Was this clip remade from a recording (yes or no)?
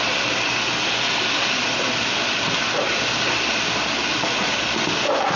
no